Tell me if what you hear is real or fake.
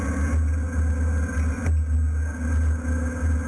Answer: real